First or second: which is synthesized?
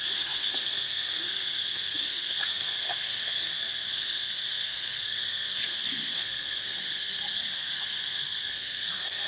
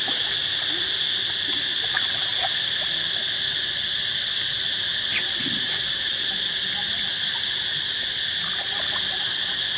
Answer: first